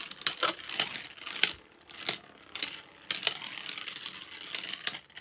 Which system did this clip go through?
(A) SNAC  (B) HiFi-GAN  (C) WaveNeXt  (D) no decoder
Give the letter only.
D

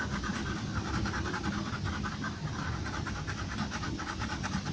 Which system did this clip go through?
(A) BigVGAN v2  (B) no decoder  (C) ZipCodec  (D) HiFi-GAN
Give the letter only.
B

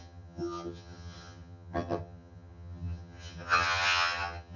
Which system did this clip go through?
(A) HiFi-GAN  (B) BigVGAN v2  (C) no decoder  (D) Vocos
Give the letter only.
A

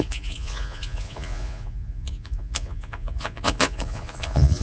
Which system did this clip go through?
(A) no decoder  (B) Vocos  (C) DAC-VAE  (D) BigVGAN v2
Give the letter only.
B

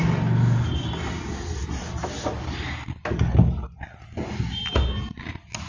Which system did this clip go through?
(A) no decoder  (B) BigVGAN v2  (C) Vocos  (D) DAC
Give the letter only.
A